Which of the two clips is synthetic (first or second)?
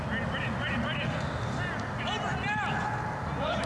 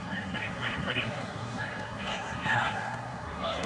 second